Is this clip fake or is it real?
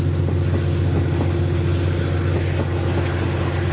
real